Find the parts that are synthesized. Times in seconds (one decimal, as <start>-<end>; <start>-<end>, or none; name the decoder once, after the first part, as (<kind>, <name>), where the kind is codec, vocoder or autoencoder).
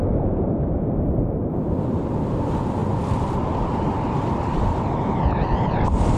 none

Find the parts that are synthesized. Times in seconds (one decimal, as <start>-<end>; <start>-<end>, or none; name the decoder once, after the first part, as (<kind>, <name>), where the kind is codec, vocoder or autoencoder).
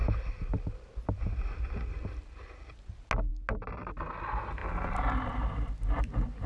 none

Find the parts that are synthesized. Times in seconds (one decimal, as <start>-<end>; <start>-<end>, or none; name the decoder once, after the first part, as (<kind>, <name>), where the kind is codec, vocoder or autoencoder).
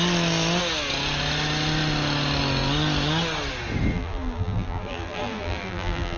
3.9-6.2 (vocoder, BigVGAN v2)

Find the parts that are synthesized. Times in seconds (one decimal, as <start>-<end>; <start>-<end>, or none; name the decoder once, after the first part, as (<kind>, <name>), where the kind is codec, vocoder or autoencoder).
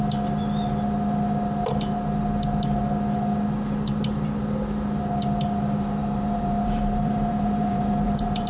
6.0-8.5 (vocoder, BigVGAN v2)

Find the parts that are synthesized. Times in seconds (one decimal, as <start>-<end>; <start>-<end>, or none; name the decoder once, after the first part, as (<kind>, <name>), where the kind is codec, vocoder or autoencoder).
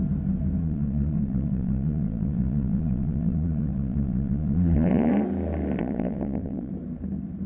0.6-5.1 (vocoder, Vocos); 5.8-6.7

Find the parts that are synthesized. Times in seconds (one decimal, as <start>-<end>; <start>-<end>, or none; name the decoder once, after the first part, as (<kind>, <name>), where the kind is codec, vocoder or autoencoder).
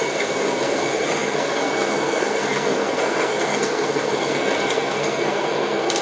0.0-6.0 (codec, SNAC)